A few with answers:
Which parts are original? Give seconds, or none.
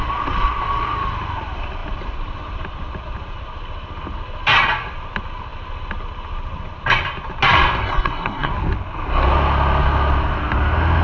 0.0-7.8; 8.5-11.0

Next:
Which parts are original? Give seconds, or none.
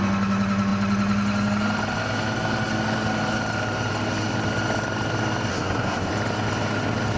0.0-5.5; 6.1-7.2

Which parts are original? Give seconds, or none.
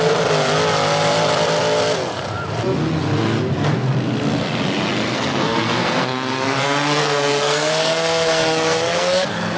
0.0-4.9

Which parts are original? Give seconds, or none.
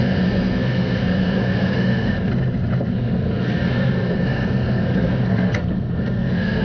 2.3-2.9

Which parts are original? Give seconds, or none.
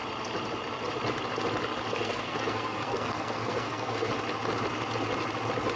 0.0-1.9; 4.1-5.8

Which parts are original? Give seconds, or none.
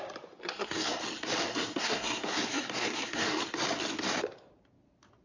0.0-0.4; 1.0-1.5; 3.4-5.2